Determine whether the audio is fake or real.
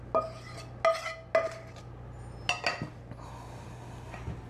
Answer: real